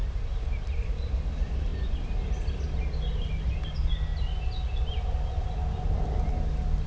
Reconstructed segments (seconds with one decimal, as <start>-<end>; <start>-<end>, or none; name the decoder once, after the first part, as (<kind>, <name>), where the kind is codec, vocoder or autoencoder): none